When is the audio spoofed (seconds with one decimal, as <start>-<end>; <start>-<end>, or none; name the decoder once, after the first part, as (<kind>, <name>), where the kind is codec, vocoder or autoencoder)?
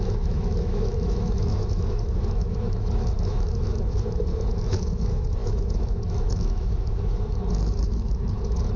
0.0-8.8 (autoencoder, DAC-VAE)